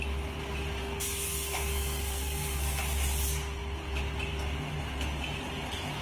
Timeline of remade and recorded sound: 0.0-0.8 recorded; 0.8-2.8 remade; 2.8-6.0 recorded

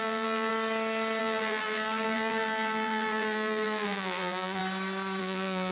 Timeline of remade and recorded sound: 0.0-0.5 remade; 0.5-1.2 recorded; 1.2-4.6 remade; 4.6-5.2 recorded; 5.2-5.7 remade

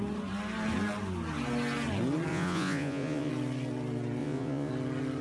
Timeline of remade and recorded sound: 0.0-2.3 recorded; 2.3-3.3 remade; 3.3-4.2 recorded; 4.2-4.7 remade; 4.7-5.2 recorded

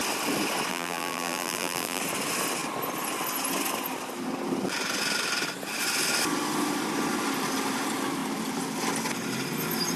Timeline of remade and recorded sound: 0.0-0.7 recorded; 0.7-2.0 remade; 2.0-10.0 recorded

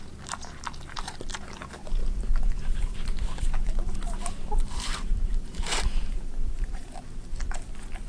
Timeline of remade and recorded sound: 0.0-2.0 recorded; 2.0-6.9 remade; 6.9-8.1 recorded

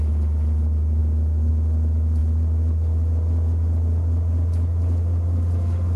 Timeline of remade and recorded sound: 0.0-6.0 recorded